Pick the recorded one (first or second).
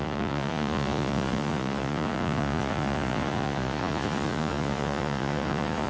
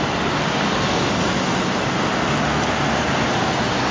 second